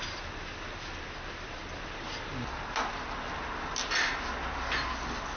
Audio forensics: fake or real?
real